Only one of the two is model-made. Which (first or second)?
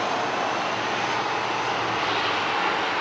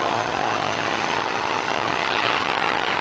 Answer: second